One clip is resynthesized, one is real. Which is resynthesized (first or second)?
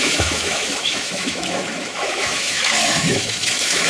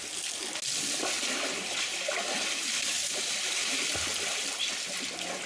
first